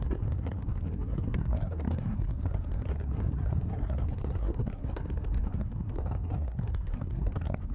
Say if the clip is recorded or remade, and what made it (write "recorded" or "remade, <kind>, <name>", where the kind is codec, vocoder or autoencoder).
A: remade, codec, SNAC